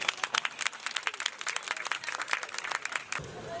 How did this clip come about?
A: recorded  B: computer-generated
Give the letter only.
A